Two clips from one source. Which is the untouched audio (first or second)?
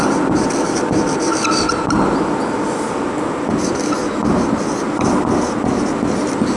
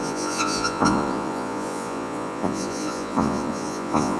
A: first